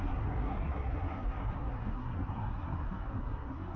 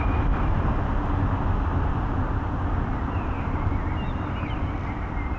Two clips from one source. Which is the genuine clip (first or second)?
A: second